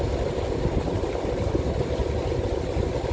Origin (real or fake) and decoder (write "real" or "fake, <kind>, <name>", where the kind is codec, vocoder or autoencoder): real